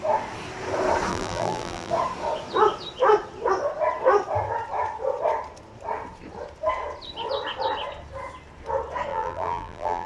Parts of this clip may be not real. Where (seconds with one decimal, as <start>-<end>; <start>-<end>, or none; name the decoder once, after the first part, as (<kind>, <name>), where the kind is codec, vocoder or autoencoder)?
1.1-1.9 (vocoder, BigVGAN v2); 9.1-10.1